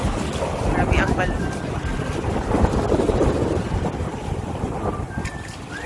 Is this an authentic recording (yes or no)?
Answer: yes